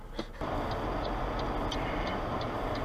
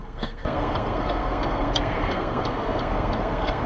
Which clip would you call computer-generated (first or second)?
second